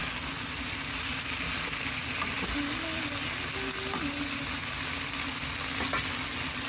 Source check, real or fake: real